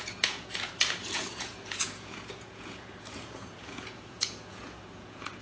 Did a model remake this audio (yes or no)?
yes